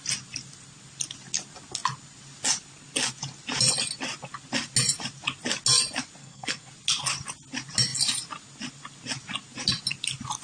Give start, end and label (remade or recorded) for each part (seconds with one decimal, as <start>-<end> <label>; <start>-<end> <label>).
0.0-6.2 recorded; 6.2-6.7 remade; 6.7-10.4 recorded